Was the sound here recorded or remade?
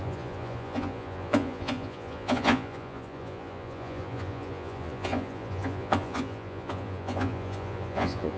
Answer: remade